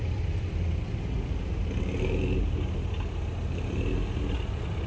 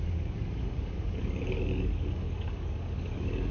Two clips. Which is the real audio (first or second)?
first